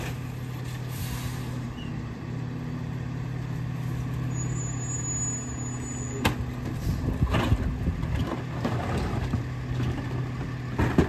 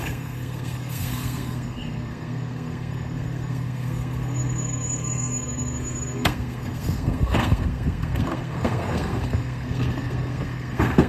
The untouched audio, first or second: first